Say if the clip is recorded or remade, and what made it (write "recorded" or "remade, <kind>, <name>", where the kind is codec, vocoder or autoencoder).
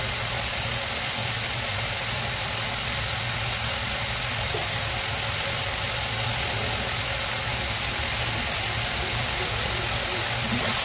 recorded